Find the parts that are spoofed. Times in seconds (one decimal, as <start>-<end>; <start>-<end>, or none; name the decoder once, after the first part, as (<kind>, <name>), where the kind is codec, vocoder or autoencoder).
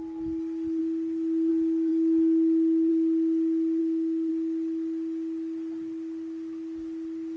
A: 0.8-1.5 (autoencoder, DAC-VAE); 3.8-4.3